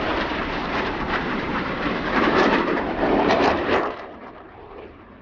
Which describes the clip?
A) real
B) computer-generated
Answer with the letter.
B